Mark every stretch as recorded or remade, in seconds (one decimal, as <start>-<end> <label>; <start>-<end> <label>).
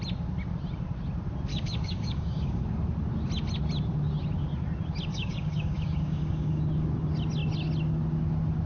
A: 0.0-1.5 recorded; 1.5-2.6 remade; 2.6-5.1 recorded; 5.1-6.6 remade; 6.6-8.7 recorded